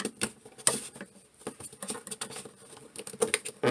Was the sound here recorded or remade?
recorded